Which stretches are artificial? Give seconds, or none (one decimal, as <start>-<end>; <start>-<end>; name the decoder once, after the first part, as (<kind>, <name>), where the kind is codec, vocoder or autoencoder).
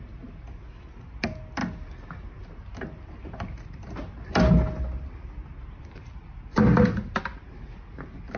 none